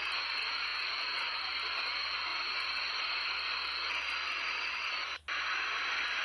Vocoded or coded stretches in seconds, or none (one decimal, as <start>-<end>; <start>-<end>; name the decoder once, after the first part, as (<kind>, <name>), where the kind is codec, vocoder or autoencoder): 0.7-1.4 (vocoder, Vocos); 2.3-2.8; 4.7-5.2